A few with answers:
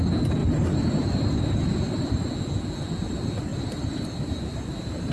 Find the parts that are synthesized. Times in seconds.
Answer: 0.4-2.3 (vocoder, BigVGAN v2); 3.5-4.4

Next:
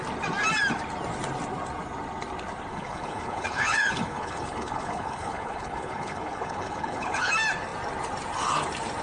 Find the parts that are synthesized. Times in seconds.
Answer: 2.7-7.3 (codec, HILCodec)

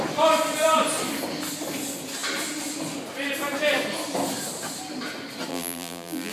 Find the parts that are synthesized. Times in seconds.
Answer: 5.5-6.3 (vocoder, BigVGAN v2)